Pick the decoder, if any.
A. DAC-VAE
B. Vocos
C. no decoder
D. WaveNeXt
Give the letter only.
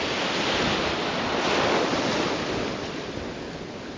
C